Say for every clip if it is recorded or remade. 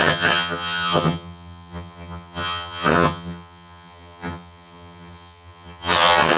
remade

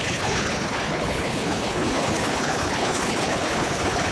remade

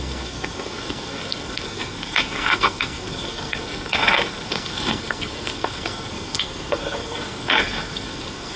remade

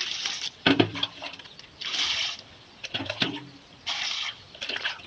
remade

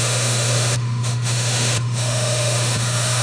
remade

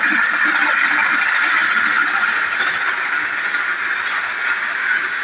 recorded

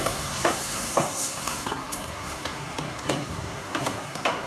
remade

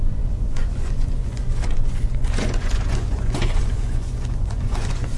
remade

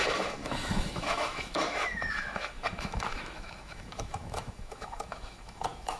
remade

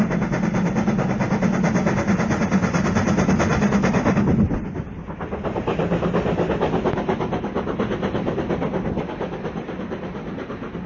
recorded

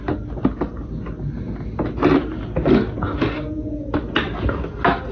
recorded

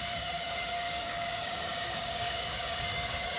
remade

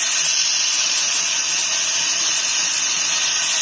recorded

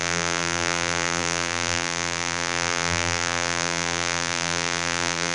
remade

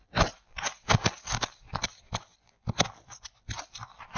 recorded